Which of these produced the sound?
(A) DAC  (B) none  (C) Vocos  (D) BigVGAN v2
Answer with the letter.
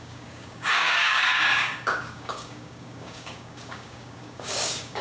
A